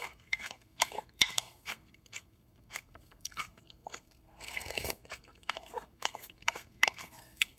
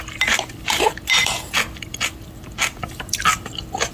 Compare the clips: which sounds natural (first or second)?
second